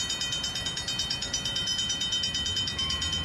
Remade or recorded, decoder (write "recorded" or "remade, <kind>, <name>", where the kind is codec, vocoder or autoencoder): remade, vocoder, BigVGAN v2